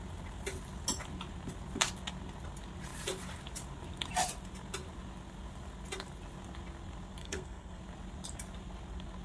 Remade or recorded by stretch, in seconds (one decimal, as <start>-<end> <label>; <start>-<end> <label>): 0.0-7.2 recorded; 7.2-7.8 remade; 7.8-9.2 recorded